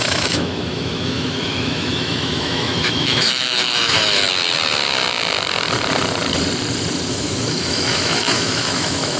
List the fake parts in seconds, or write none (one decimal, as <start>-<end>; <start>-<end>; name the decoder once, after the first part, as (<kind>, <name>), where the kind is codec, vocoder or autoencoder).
0.0-4.2 (autoencoder, DAC-VAE); 7.1-9.2